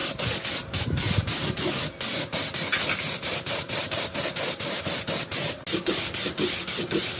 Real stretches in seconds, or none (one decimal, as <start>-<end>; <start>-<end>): 0.0-7.2